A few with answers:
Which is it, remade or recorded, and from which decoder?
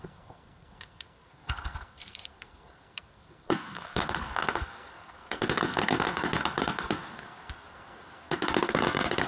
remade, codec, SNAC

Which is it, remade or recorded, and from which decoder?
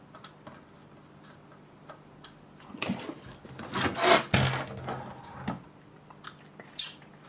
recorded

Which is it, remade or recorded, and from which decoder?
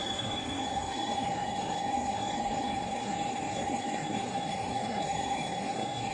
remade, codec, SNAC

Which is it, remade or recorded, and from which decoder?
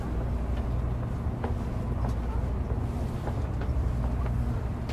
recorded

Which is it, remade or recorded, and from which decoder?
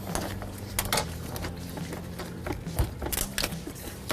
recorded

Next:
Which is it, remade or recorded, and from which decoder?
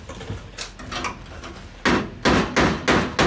recorded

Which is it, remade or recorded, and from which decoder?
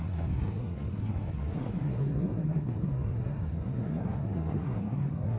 remade, codec, SNAC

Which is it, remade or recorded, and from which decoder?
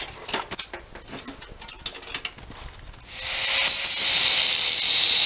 recorded